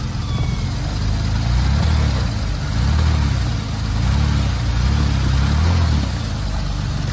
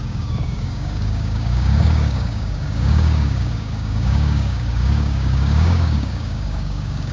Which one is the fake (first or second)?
second